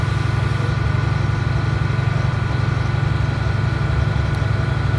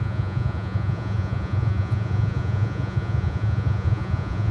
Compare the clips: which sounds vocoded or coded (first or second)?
second